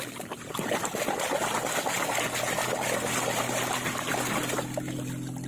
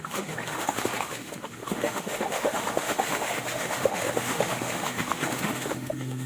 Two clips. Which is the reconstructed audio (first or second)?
second